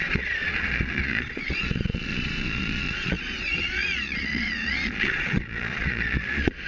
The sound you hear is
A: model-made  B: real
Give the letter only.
A